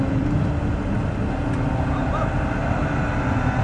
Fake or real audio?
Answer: real